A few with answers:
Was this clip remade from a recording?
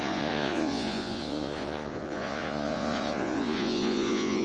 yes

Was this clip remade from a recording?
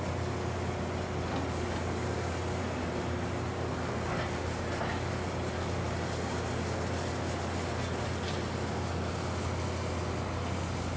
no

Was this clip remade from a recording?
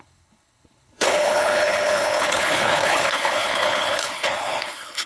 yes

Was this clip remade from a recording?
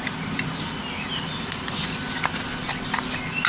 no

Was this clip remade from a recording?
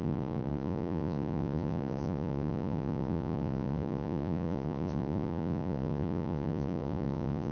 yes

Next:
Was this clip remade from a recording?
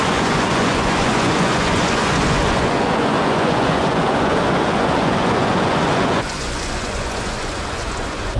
yes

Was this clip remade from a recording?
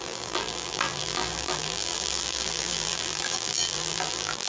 yes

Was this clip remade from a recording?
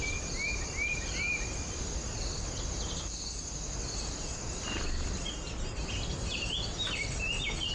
no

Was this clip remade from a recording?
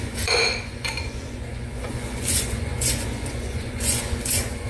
yes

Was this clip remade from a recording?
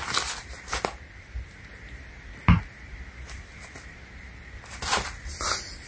no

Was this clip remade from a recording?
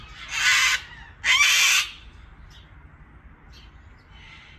no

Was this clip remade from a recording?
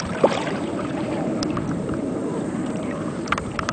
yes